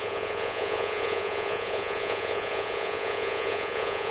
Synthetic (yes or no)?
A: yes